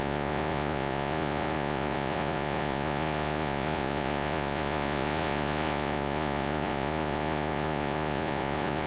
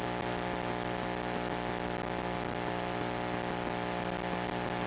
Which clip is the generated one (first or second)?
first